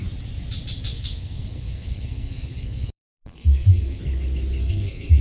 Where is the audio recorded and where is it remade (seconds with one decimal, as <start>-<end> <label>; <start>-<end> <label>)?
0.0-0.9 recorded; 0.9-4.0 remade; 4.0-4.6 recorded; 4.6-5.2 remade

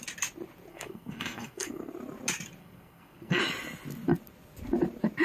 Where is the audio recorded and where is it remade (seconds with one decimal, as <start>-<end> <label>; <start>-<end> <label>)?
0.0-0.7 recorded; 0.7-1.9 remade; 1.9-2.6 recorded; 2.6-3.4 remade; 3.4-5.2 recorded